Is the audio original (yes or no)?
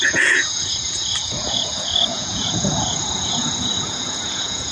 no